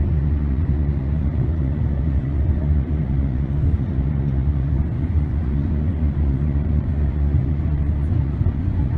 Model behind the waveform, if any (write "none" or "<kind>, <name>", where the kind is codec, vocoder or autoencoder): vocoder, Vocos